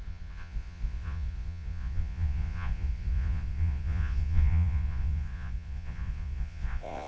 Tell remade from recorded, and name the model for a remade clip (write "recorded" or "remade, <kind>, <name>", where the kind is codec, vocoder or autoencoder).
remade, vocoder, Vocos